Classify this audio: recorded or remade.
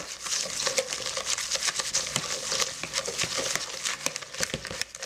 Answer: recorded